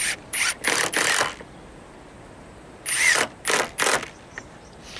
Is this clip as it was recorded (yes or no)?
yes